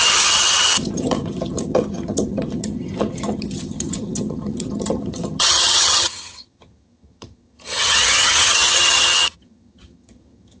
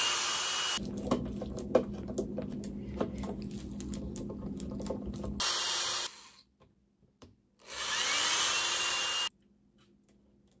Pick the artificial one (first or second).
first